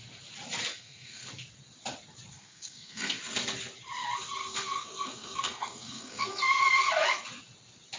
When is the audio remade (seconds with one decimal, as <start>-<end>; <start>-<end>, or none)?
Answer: 0.7-1.3; 2.3-3.2; 4.4-6.6